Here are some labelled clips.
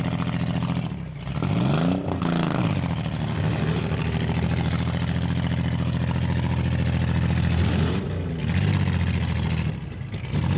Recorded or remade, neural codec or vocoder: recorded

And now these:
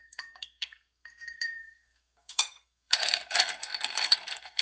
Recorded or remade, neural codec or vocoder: remade, codec, SNAC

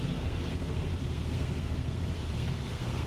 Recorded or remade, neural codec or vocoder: remade, codec, SNAC